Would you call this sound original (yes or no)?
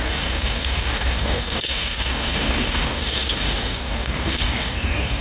no